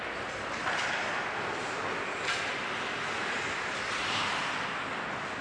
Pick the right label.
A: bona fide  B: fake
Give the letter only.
A